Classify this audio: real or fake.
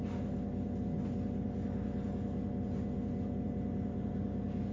real